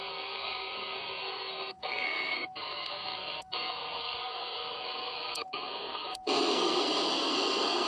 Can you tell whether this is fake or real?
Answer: fake